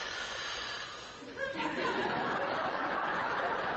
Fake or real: fake